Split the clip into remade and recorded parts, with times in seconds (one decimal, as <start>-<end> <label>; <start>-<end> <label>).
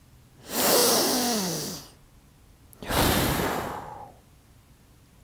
0.0-5.2 recorded